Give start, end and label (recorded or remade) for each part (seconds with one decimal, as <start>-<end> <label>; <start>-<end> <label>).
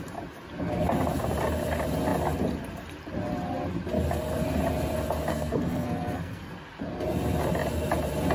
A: 0.0-5.3 recorded; 5.3-6.5 remade; 6.5-8.3 recorded